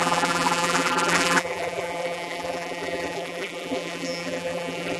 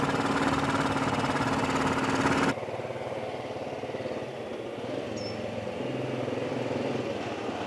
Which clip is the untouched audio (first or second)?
second